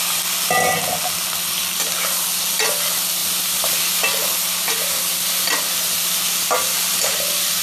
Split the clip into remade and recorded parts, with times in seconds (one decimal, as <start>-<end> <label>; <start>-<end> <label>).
0.0-7.6 recorded